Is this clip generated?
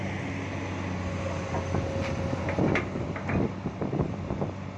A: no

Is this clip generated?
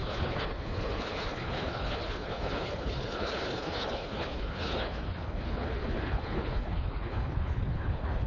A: yes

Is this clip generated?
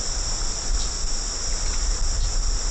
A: no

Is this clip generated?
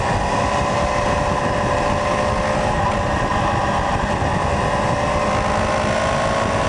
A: no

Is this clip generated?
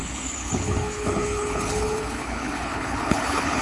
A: yes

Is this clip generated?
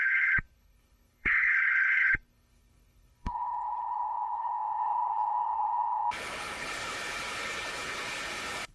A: yes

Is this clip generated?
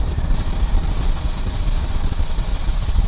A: no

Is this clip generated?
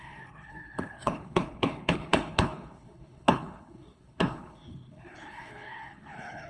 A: yes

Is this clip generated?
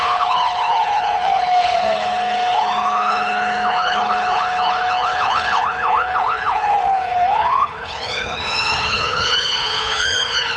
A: yes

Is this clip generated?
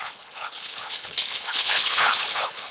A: yes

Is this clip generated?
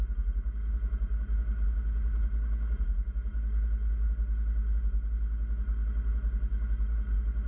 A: no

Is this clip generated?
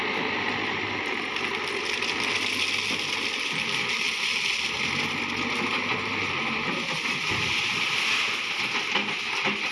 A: no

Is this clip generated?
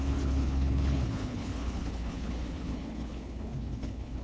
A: yes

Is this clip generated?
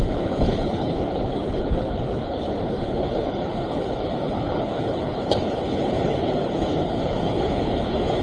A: yes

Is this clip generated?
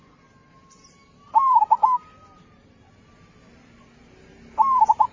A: no